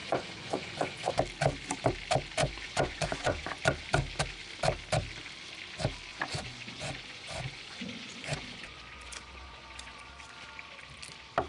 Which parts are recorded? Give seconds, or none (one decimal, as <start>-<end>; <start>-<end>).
1.1-2.4; 3.6-6.1; 10.1-11.5